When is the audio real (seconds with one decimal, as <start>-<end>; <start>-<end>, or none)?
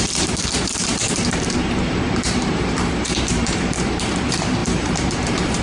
none